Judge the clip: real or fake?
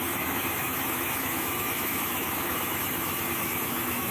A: fake